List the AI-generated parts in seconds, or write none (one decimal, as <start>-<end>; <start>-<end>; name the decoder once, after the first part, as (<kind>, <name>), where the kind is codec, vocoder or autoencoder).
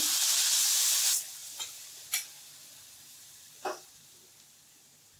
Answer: 1.4-2.0 (vocoder, BigVGAN v2); 3.1-5.2